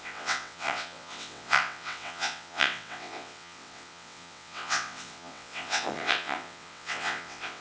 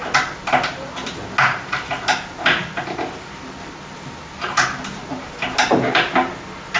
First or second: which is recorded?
second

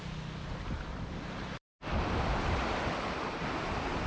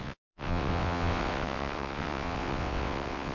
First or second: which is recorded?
first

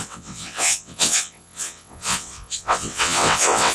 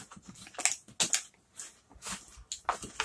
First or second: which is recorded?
second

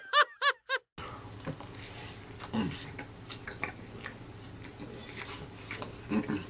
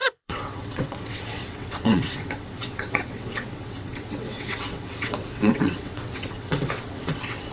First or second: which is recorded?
first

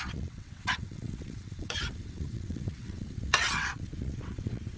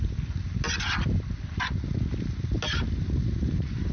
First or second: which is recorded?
second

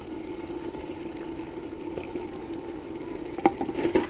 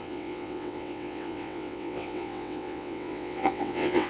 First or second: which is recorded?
first